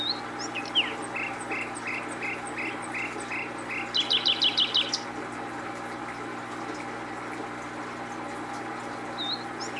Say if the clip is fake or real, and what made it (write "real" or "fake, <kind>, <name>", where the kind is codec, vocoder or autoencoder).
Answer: real